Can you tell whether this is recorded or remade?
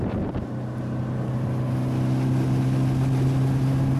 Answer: recorded